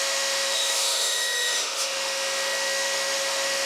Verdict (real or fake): fake